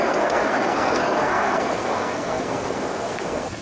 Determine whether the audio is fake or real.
fake